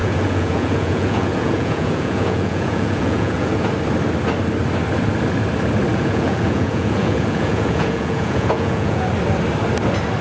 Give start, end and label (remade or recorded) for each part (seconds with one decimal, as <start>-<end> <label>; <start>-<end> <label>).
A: 0.0-3.7 remade; 3.7-5.9 recorded; 5.9-9.1 remade; 9.1-10.2 recorded